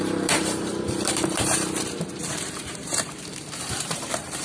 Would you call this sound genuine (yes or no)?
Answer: no